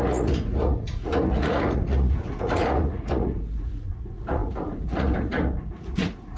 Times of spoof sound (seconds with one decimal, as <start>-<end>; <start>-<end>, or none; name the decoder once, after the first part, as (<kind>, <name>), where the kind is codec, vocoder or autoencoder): 0.0-6.4 (vocoder, Vocos)